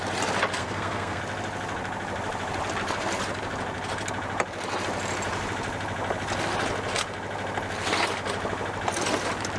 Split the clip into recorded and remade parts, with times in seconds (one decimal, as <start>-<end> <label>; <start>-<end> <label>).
0.0-0.6 recorded; 0.6-1.2 remade; 1.2-9.6 recorded